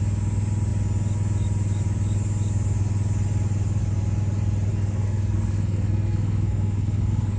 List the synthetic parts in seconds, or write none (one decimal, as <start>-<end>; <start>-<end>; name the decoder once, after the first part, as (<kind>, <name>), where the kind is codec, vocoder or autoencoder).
4.7-7.4 (codec, SNAC)